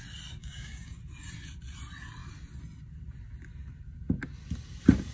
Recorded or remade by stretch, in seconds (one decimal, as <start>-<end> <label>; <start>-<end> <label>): 0.0-0.4 recorded; 0.4-1.0 remade; 1.0-5.1 recorded